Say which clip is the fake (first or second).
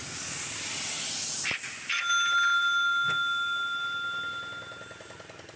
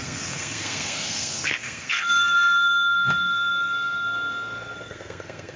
second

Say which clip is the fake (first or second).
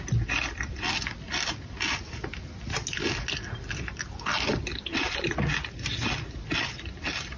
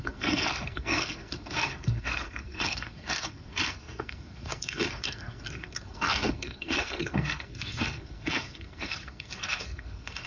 second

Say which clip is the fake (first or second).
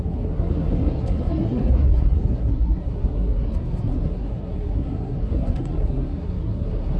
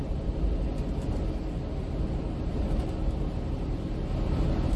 first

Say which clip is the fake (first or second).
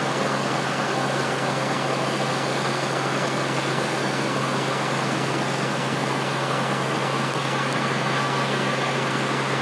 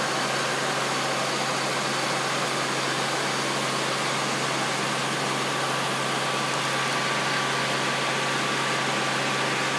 first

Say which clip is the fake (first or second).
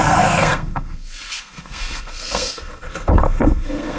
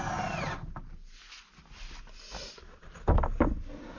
first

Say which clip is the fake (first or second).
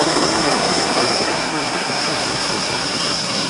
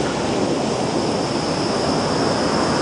first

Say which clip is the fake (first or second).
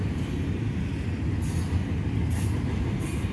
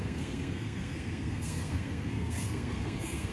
second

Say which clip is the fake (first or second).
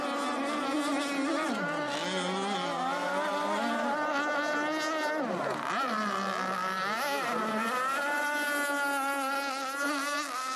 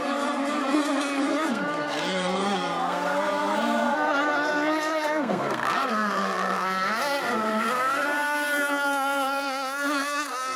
second